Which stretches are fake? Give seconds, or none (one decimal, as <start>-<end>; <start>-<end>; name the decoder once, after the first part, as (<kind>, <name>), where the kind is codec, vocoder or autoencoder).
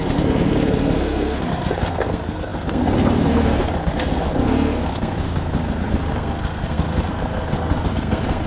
0.0-8.5 (codec, SNAC)